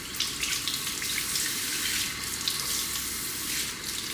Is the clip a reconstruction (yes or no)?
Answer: no